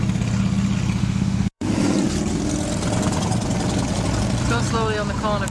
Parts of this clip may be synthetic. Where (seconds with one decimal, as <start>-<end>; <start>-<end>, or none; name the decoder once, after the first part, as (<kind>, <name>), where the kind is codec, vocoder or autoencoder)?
1.0-1.7 (autoencoder, DAC-VAE)